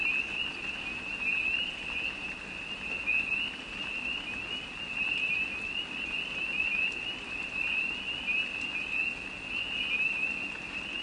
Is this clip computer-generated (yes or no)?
no